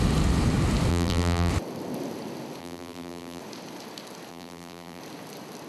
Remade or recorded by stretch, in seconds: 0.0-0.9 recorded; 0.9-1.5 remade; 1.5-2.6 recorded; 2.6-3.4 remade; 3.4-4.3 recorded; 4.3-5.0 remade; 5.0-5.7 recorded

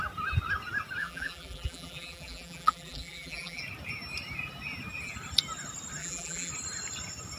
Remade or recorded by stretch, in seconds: 0.0-1.0 recorded; 1.0-3.6 remade; 3.6-6.0 recorded; 6.0-6.5 remade; 6.5-7.4 recorded

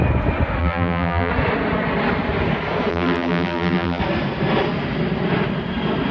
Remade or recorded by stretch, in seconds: 0.0-0.6 recorded; 0.6-1.3 remade; 1.3-2.9 recorded; 2.9-4.0 remade; 4.0-6.1 recorded

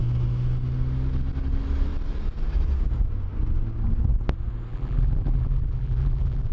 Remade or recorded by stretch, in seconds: 0.0-4.7 recorded; 4.7-6.5 remade